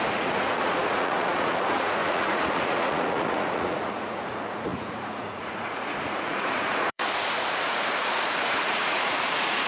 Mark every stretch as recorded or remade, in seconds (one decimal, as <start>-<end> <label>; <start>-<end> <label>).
0.0-9.7 remade